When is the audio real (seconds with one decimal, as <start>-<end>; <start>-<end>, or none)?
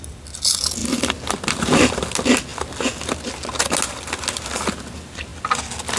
0.0-6.0